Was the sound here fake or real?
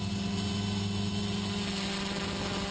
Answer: real